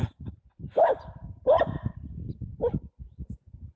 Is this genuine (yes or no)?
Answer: no